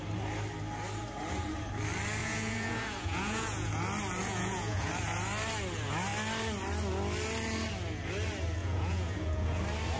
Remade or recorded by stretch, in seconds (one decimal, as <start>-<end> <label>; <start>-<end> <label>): 0.0-2.2 recorded; 2.2-3.7 remade; 3.7-4.2 recorded; 4.2-4.9 remade; 4.9-8.6 recorded; 8.6-9.6 remade; 9.6-10.0 recorded